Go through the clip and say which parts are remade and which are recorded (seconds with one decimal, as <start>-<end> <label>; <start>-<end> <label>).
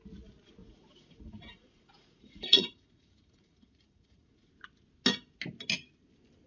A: 0.0-0.6 recorded; 0.6-4.5 remade; 4.5-6.5 recorded